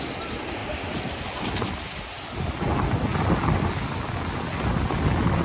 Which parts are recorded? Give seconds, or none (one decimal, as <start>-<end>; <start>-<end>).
0.0-5.4